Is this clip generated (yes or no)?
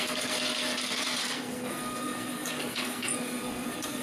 yes